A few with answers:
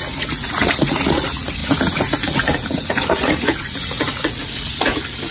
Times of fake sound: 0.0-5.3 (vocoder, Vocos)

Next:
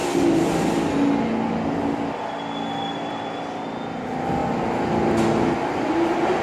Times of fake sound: 4.4-5.2 (vocoder, BigVGAN v2)